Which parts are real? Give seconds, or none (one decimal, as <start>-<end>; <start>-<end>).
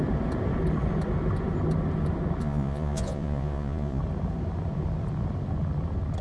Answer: 0.0-2.4; 4.0-6.2